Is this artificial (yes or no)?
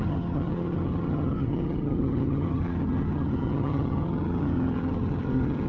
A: yes